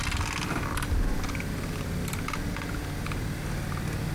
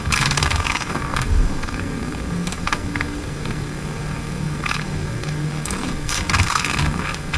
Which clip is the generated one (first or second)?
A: second